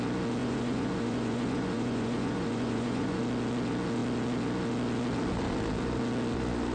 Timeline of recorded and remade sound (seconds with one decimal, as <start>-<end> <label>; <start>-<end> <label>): 0.0-0.4 recorded; 0.4-3.2 remade; 3.2-6.7 recorded